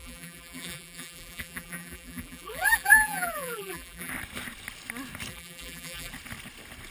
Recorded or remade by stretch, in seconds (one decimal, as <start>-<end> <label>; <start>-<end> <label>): 0.0-4.1 remade; 4.1-5.3 recorded; 5.3-6.1 remade; 6.1-6.9 recorded